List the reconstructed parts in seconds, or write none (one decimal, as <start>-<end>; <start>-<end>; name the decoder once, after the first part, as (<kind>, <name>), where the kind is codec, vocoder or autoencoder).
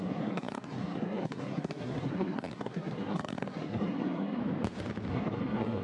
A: 0.0-4.4 (codec, SNAC); 5.1-5.8